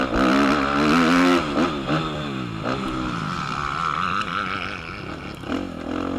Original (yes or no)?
yes